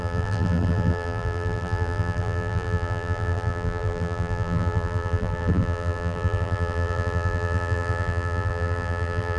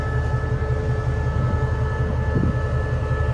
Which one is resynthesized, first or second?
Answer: first